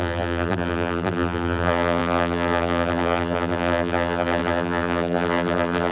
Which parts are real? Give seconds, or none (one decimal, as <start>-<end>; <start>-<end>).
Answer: none